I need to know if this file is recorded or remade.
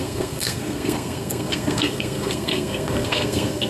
remade